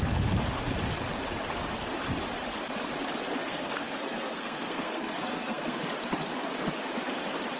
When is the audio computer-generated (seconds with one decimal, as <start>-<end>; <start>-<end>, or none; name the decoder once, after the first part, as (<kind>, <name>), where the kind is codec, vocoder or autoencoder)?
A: 3.4-5.8 (codec, SNAC)